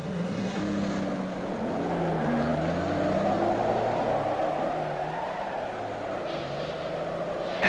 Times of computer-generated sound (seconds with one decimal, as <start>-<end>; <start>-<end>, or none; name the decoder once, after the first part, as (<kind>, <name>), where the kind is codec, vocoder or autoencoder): 0.0-0.6 (codec, SNAC)